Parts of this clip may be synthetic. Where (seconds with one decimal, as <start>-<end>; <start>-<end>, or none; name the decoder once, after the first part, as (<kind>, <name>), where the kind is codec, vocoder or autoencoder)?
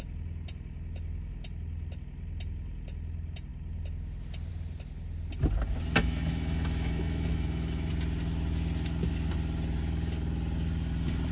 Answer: 6.0-7.9 (autoencoder, DAC-VAE)